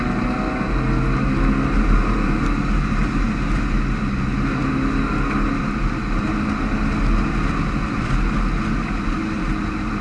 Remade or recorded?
recorded